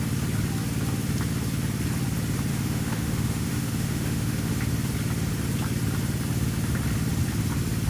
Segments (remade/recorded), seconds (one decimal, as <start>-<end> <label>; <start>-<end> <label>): 0.0-2.5 recorded; 2.5-4.5 remade; 4.5-7.9 recorded